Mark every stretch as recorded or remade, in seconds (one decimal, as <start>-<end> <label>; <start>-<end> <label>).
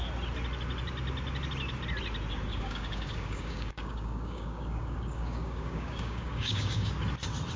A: 0.0-2.5 recorded; 2.5-6.9 remade; 6.9-7.6 recorded